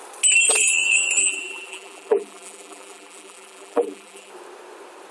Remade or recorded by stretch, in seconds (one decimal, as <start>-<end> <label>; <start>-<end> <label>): 0.0-1.2 recorded; 1.2-4.3 remade; 4.3-5.1 recorded